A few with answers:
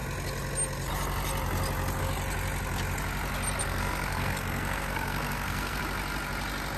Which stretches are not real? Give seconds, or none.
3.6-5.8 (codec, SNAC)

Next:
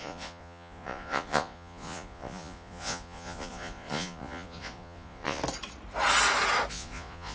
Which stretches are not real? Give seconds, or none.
0.0-5.4 (vocoder, Vocos); 6.7-7.3

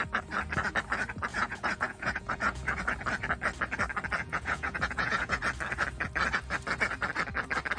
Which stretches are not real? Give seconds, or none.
1.3-2.8 (vocoder, Vocos); 4.2-5.4

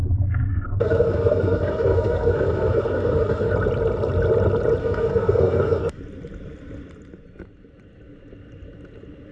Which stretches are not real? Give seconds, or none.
0.5-3.5 (codec, SNAC); 4.8-6.0

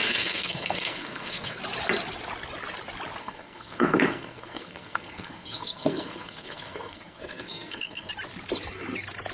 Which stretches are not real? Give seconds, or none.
0.0-1.6 (codec, SNAC); 3.2-8.1